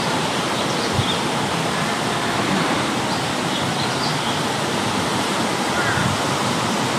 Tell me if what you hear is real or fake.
real